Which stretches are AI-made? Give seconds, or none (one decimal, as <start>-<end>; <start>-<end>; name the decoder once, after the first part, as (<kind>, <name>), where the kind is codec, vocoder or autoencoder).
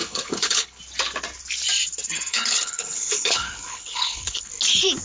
0.0-0.8 (codec, HILCodec); 2.3-4.5